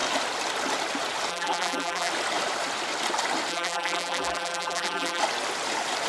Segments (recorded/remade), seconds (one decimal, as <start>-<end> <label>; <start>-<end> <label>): 0.0-1.3 recorded; 1.3-2.1 remade; 2.1-3.5 recorded; 3.5-5.2 remade; 5.2-6.1 recorded

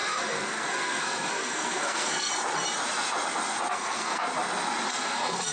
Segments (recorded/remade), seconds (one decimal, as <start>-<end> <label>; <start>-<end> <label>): 0.0-2.3 remade; 2.3-3.7 recorded; 3.7-4.2 remade; 4.2-4.9 recorded; 4.9-5.5 remade

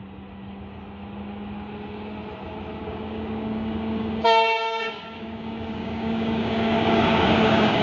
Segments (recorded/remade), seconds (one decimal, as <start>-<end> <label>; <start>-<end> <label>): 0.0-2.8 recorded; 2.8-7.8 remade

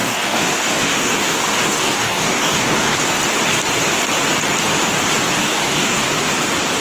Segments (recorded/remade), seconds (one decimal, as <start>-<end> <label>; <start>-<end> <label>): 0.0-3.2 remade; 3.2-5.4 recorded; 5.4-6.1 remade; 6.1-6.8 recorded

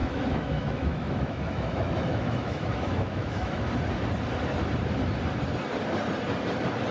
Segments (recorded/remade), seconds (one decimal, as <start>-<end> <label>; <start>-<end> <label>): 0.0-3.7 remade; 3.7-6.9 recorded

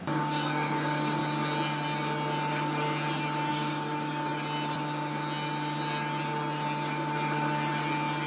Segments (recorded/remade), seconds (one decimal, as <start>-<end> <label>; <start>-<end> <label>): 0.0-1.2 remade; 1.2-3.5 recorded; 3.5-4.3 remade; 4.3-8.3 recorded